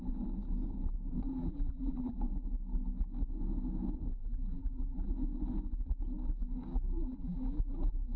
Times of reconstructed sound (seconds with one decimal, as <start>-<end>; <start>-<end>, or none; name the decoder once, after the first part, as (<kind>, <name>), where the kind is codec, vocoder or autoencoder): 1.3-2.2 (vocoder, BigVGAN v2); 4.2-5.1; 6.7-8.2